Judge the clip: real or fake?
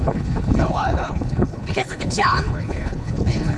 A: fake